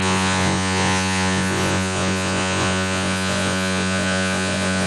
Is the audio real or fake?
fake